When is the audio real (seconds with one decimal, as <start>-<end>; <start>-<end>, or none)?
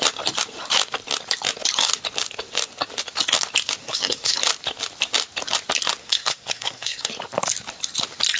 0.0-3.8; 4.4-6.0; 7.1-8.4